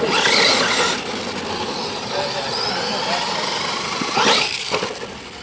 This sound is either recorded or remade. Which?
recorded